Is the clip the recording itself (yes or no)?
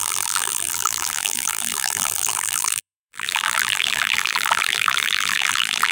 no